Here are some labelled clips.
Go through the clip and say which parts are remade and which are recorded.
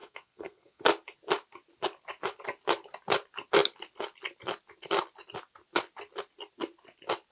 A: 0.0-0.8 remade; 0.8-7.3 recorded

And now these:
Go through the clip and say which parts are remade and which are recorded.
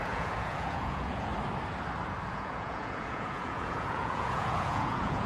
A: 0.0-1.3 remade; 1.3-2.3 recorded; 2.3-5.3 remade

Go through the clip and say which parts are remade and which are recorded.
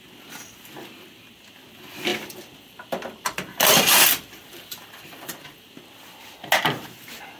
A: 0.0-2.1 recorded; 2.1-5.6 remade; 5.6-7.4 recorded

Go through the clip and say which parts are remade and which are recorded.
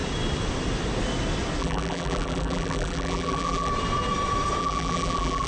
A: 0.0-1.6 recorded; 1.6-3.7 remade; 3.7-4.6 recorded; 4.6-5.5 remade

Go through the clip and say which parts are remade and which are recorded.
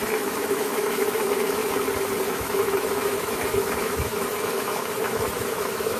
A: 0.0-1.6 remade; 1.6-2.3 recorded; 2.3-6.0 remade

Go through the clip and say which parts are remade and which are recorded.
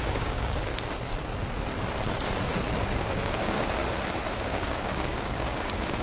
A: 0.0-0.7 remade; 0.7-3.0 recorded; 3.0-3.8 remade; 3.8-4.4 recorded; 4.4-6.0 remade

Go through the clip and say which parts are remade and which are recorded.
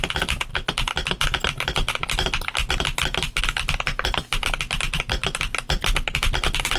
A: 0.0-5.2 recorded; 5.2-5.9 remade; 5.9-6.8 recorded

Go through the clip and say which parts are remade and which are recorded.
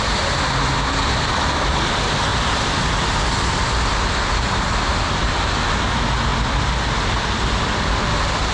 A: 0.0-8.5 recorded